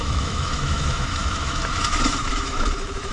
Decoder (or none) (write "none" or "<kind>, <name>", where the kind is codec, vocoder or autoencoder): autoencoder, DAC-VAE